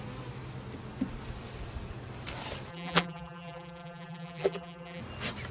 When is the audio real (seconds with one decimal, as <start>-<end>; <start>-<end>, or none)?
0.0-2.7; 5.0-5.5